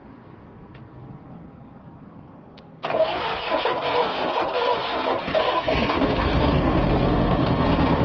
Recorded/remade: remade